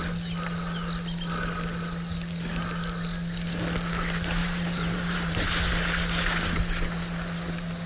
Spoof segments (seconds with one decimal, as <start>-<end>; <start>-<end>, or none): 4.4-5.3